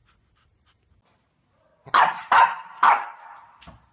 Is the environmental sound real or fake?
real